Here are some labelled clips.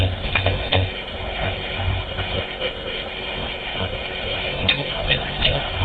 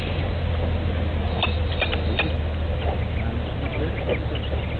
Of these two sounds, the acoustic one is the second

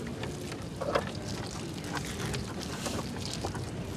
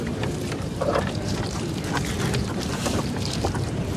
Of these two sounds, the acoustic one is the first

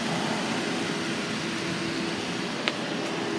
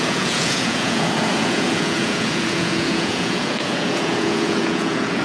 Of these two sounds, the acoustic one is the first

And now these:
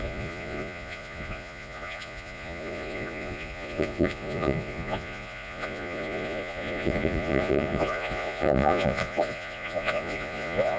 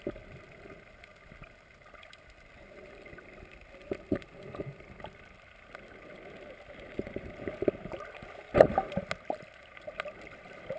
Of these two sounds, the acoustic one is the second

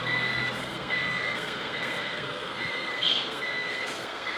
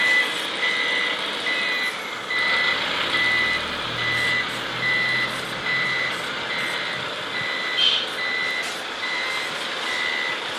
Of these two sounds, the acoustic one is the second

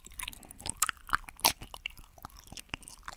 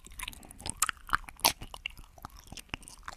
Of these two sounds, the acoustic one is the second